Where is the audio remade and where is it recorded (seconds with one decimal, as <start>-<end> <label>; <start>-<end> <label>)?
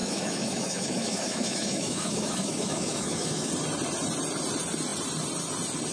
0.0-3.5 remade; 3.5-5.9 recorded